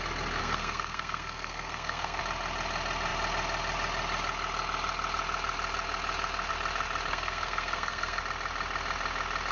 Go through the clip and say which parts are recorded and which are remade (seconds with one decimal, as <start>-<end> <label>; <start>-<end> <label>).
0.0-0.4 recorded; 0.4-2.2 remade; 2.2-7.1 recorded; 7.1-8.2 remade; 8.2-9.5 recorded